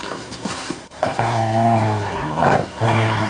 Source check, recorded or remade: remade